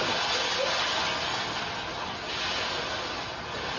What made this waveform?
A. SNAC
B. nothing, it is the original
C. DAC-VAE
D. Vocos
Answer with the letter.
B